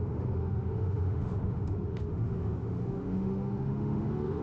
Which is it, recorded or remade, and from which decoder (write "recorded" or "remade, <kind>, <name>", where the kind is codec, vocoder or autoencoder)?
remade, autoencoder, DAC-VAE